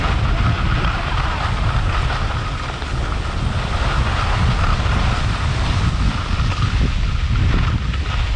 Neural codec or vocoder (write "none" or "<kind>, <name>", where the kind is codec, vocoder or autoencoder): none